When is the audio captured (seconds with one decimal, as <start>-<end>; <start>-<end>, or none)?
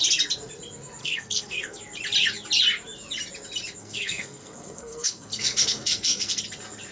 0.0-1.0; 1.8-3.8; 6.4-6.9